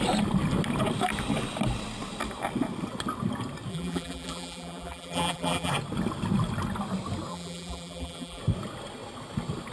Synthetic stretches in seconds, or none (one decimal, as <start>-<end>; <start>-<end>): 3.7-5.7; 7.3-8.4